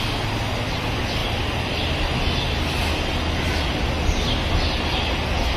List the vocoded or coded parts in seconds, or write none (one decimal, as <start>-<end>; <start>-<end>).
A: none